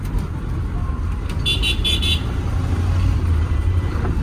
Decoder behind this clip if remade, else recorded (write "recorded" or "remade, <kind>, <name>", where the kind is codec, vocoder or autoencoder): recorded